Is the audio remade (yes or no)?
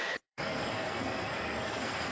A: yes